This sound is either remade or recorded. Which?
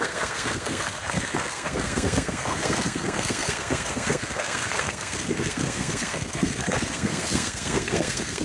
remade